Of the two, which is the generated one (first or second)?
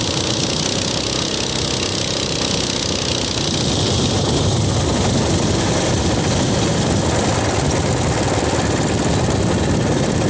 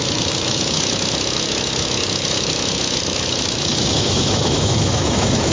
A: second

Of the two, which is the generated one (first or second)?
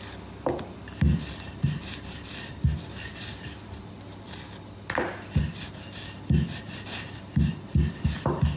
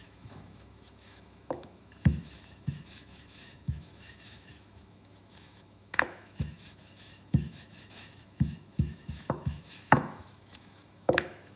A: second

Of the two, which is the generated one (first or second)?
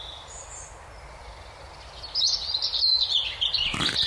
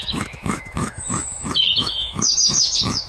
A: second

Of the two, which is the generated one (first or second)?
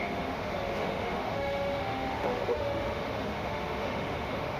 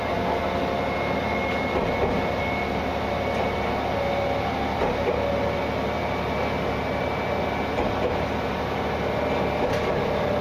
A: first